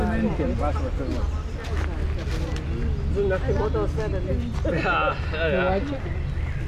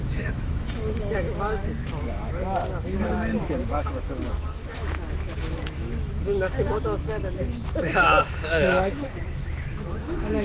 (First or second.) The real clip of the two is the first